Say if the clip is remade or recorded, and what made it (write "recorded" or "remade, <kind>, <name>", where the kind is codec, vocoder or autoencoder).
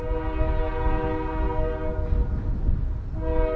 recorded